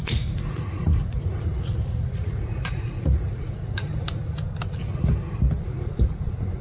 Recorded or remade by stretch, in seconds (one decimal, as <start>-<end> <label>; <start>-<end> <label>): 0.0-3.9 remade; 3.9-5.6 recorded; 5.6-6.6 remade